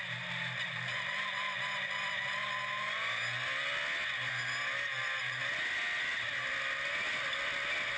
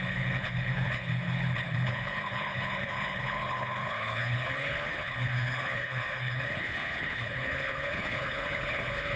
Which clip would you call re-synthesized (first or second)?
second